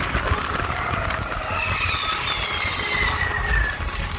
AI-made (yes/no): no